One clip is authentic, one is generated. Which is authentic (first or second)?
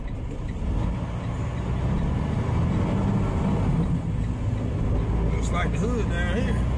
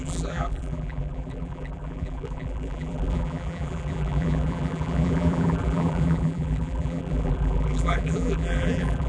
first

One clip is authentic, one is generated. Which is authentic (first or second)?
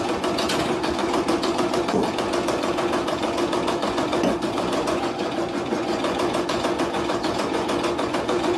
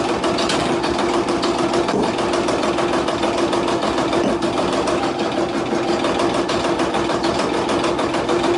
second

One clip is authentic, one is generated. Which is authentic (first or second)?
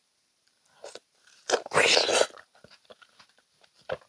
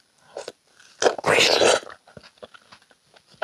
second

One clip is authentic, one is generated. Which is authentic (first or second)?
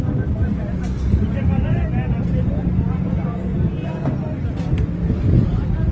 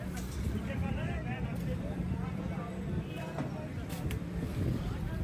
first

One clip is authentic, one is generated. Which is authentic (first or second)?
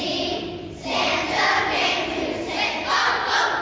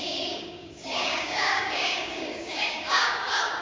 first